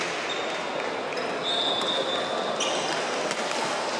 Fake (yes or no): no